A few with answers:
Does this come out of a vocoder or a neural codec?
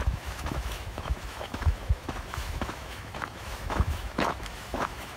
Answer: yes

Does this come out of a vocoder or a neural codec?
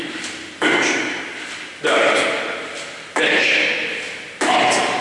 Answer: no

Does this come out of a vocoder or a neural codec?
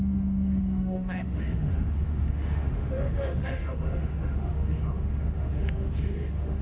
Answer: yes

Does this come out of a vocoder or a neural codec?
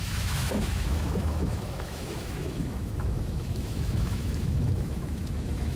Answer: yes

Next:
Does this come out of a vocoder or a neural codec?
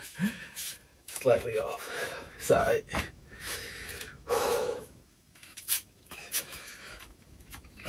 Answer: yes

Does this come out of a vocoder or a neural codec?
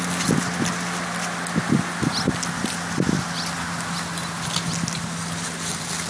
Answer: no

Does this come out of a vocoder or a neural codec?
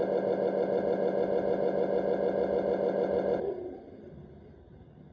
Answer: no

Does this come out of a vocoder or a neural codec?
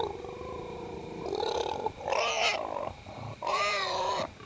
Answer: no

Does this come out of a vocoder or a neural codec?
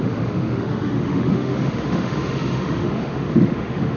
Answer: yes